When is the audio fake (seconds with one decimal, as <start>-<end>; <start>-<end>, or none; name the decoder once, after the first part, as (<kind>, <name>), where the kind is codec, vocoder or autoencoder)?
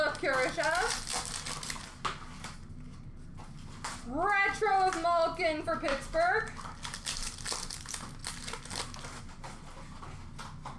none